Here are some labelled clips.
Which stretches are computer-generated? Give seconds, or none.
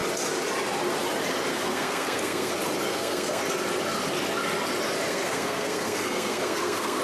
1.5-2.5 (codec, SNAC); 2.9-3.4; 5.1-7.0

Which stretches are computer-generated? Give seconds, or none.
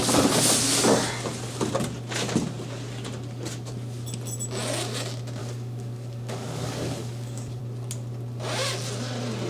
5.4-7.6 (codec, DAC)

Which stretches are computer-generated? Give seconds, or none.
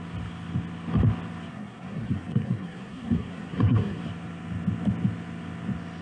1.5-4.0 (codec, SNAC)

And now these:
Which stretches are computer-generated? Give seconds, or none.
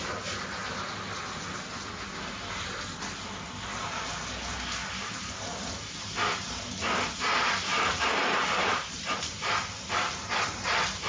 4.8-5.4 (vocoder, BigVGAN v2); 7.7-9.5